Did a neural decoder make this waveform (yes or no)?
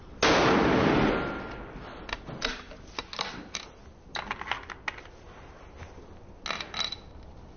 no